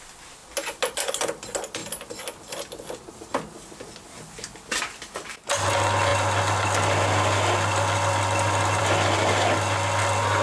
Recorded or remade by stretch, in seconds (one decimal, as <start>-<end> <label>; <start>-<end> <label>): 0.0-10.4 recorded